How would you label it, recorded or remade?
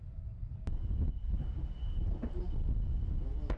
recorded